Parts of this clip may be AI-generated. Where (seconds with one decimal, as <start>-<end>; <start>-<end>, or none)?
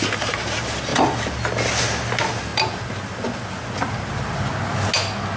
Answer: none